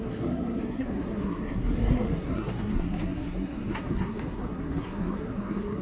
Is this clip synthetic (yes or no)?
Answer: yes